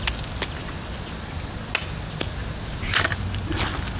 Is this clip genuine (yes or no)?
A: yes